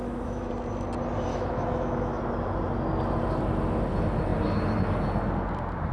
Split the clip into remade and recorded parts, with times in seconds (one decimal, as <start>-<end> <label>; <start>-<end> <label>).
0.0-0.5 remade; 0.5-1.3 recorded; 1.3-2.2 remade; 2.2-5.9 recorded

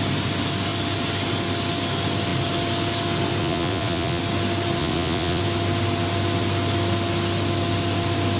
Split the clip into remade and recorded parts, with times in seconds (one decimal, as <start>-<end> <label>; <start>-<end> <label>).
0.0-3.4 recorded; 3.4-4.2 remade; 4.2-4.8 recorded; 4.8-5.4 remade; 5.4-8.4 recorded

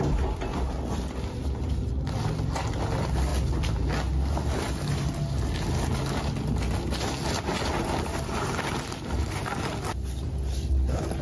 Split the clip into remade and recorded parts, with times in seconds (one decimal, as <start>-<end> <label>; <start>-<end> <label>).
0.0-11.2 recorded